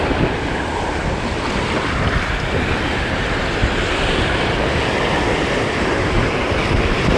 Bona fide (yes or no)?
no